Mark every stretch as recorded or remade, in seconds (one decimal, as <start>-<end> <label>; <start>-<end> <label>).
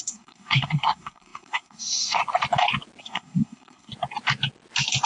0.0-2.2 remade; 2.2-3.0 recorded; 3.0-3.9 remade; 3.9-5.1 recorded